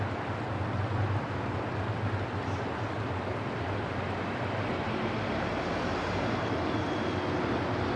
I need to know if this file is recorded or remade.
recorded